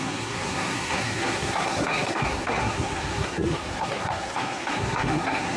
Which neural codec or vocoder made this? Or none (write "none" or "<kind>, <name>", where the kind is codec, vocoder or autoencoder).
codec, SNAC